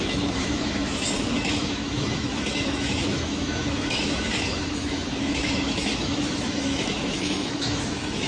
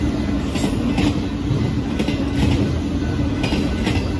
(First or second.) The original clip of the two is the second